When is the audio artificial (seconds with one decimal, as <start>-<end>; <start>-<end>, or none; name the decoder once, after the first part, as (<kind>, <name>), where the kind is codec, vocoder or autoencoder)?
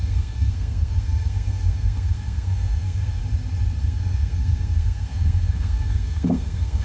0.0-3.2 (codec, SNAC); 3.8-6.8